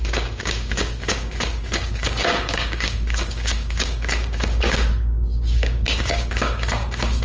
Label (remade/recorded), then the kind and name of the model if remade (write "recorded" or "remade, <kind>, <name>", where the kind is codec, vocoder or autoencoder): remade, codec, DAC